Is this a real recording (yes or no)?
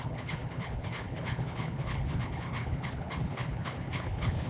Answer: no